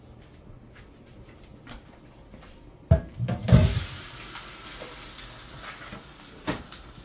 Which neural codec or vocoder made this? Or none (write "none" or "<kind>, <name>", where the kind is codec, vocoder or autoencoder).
none